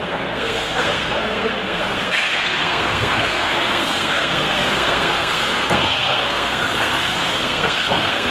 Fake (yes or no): yes